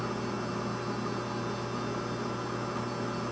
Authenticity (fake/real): real